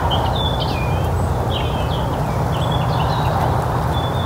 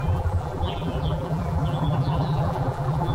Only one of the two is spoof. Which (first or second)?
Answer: second